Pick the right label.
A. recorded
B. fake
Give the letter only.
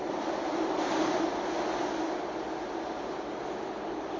A